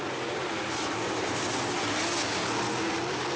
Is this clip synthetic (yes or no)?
no